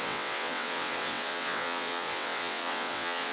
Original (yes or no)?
no